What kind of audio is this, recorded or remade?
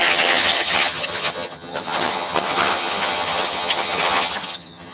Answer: remade